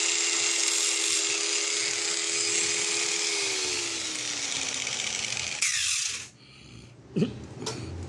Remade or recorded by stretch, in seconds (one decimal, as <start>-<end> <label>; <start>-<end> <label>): 0.0-8.1 recorded